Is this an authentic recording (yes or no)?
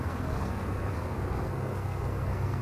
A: no